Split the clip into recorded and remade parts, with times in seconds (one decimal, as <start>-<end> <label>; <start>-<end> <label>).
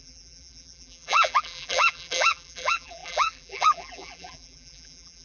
0.0-5.2 remade